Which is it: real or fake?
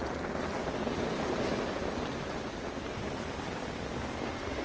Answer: real